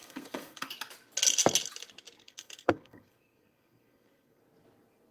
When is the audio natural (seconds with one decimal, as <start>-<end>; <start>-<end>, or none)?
0.7-2.2; 4.4-5.1